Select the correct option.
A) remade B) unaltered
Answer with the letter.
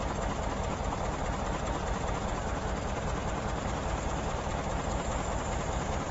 A